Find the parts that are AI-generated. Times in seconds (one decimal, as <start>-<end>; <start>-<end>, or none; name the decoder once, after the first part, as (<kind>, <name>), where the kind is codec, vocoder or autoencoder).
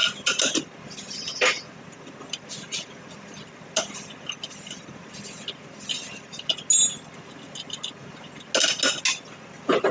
none